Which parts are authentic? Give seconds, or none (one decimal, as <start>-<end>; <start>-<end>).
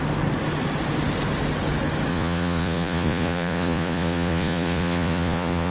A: 0.0-2.1